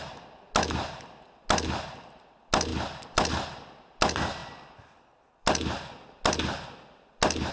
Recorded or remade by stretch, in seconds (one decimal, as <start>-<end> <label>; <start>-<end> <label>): 0.0-7.5 recorded